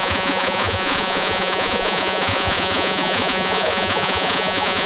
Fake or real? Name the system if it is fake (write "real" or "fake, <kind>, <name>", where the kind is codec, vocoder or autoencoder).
fake, vocoder, Vocos